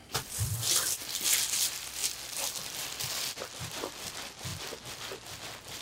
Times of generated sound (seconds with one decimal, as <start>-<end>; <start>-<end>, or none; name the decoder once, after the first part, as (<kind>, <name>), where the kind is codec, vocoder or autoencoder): 0.0-2.0 (vocoder, BigVGAN v2); 3.0-4.5